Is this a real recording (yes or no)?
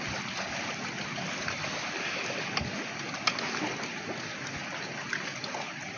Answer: yes